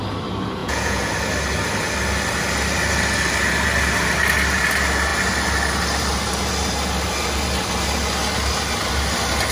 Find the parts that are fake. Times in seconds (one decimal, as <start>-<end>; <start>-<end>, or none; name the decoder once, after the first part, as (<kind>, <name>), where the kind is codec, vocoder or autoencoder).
0.6-1.1 (vocoder, Vocos)